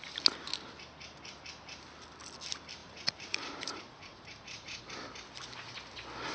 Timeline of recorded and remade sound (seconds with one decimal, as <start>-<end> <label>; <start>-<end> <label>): 0.0-2.8 recorded; 2.8-4.8 remade; 4.8-6.3 recorded